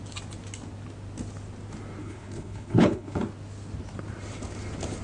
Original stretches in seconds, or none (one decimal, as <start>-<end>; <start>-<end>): 0.0-2.0; 3.2-5.0